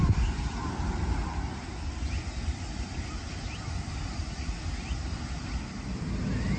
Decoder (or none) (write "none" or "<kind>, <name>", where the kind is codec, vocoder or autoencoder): none